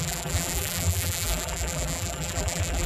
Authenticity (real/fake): fake